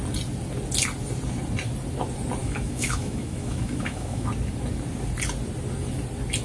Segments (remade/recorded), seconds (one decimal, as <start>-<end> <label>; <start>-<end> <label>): 0.0-2.4 recorded; 2.4-4.3 remade; 4.3-6.4 recorded